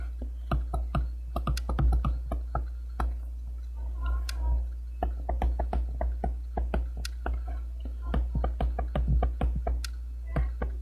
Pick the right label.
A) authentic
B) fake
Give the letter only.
A